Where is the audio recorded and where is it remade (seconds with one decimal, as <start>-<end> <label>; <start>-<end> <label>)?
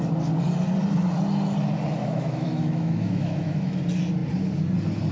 0.0-2.0 recorded; 2.0-3.8 remade; 3.8-5.1 recorded